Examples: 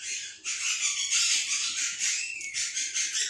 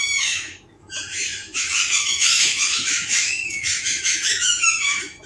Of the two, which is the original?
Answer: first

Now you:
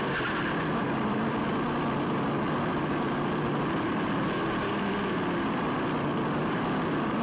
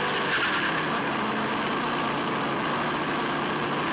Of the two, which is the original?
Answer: second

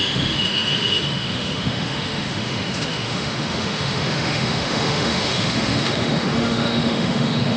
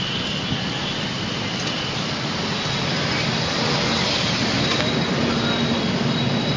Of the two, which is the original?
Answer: second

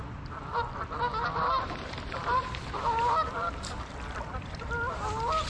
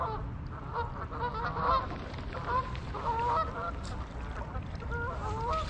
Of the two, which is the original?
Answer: second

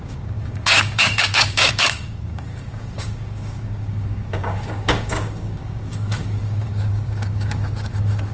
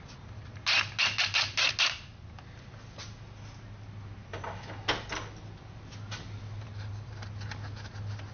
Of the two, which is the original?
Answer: second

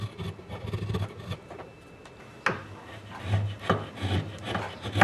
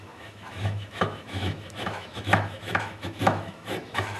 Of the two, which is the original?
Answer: first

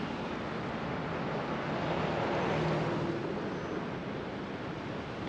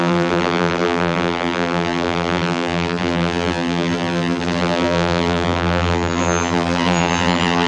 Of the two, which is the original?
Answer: first